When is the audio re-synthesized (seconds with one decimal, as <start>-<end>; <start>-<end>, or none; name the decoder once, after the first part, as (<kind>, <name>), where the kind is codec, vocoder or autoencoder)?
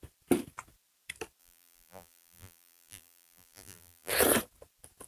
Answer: 1.4-4.1 (vocoder, BigVGAN v2)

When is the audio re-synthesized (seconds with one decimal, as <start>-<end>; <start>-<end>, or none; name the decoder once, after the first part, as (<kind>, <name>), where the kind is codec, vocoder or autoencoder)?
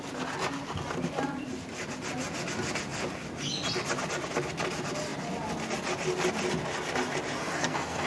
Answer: 7.4-8.1 (codec, SNAC)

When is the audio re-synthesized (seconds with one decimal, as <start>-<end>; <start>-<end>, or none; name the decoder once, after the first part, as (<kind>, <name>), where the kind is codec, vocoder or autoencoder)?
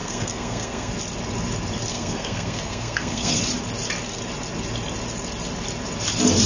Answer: 0.0-0.9 (codec, SNAC); 1.9-3.4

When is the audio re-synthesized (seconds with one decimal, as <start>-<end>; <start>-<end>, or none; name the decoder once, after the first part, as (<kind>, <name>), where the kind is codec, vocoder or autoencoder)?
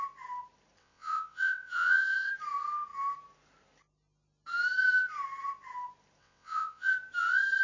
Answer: 0.8-2.3 (vocoder, WaveNeXt); 6.2-6.9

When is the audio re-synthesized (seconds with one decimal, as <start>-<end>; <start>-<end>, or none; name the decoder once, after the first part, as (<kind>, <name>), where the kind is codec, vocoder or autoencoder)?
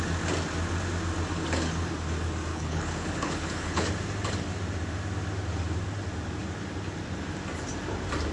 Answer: 2.5-3.9 (codec, HILCodec)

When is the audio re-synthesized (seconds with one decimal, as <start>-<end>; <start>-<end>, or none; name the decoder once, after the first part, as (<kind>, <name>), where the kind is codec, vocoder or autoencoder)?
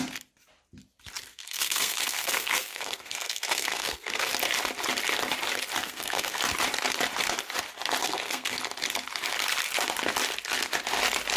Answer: 1.3-4.3 (codec, SNAC); 5.8-6.4; 8.0-8.6